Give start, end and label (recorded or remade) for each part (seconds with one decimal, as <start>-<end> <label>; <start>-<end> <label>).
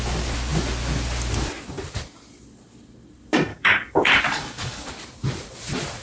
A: 0.0-3.5 recorded; 3.5-4.9 remade; 4.9-6.0 recorded